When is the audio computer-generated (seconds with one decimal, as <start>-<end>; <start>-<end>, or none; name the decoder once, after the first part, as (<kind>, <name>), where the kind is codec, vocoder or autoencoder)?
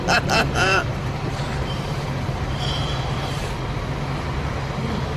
0.4-3.4 (vocoder, BigVGAN v2)